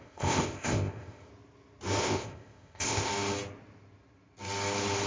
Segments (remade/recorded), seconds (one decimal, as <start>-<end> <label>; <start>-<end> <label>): 0.0-1.3 remade; 1.3-2.0 recorded; 2.0-3.1 remade; 3.1-5.1 recorded

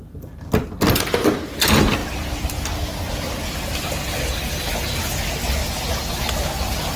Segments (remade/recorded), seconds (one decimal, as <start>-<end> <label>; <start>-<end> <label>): 0.0-5.6 recorded; 5.6-6.2 remade; 6.2-7.0 recorded

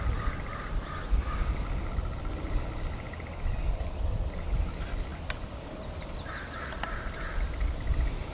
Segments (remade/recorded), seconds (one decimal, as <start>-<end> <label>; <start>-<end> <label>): 0.0-8.3 recorded

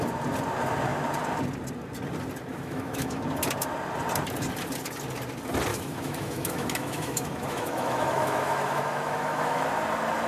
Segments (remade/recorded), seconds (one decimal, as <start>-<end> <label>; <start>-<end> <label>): 0.0-2.5 recorded; 2.5-3.2 remade; 3.2-5.7 recorded; 5.7-9.7 remade; 9.7-10.3 recorded

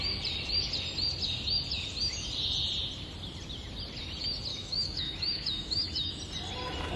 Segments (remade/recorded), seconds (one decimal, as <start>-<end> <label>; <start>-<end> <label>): 0.0-4.5 recorded; 4.5-6.2 remade; 6.2-7.0 recorded

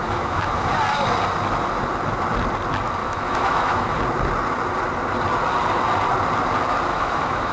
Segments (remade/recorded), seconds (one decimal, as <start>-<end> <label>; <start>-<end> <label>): 0.0-0.7 remade; 0.7-3.0 recorded; 3.0-4.0 remade; 4.0-6.9 recorded; 6.9-7.5 remade

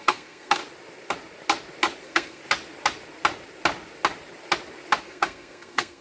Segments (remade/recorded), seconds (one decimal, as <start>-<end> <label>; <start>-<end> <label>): 0.0-0.6 remade; 0.6-2.0 recorded; 2.0-2.4 remade; 2.4-5.0 recorded; 5.0-6.0 remade

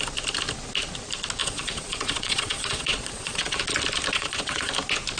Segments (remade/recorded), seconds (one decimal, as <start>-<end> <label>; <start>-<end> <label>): 0.0-1.4 recorded; 1.4-3.6 remade; 3.6-4.1 recorded; 4.1-4.7 remade; 4.7-5.2 recorded